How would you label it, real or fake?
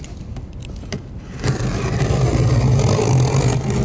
real